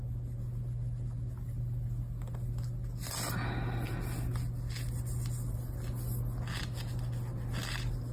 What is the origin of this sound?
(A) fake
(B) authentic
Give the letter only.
B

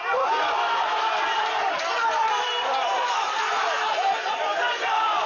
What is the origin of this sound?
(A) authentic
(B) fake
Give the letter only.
B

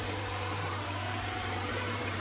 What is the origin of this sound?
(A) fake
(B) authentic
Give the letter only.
A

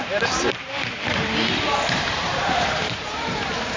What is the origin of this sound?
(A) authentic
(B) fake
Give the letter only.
B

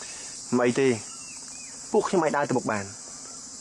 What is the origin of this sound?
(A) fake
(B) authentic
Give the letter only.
A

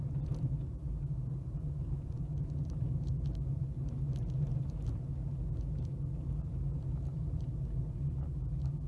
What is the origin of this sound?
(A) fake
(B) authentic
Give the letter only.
B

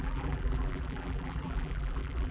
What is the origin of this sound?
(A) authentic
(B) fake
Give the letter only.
B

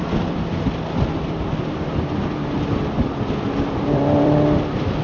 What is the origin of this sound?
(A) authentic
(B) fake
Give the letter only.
B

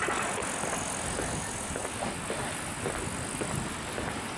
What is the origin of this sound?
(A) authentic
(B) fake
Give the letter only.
A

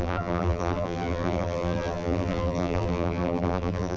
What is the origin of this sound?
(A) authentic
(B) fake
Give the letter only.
B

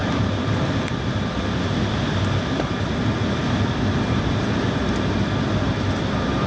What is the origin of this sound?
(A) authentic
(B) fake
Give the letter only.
B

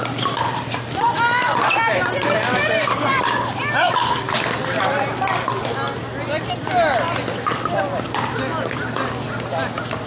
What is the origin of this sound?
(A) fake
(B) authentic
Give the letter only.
B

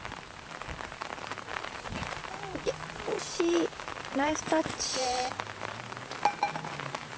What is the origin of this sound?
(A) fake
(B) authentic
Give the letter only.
A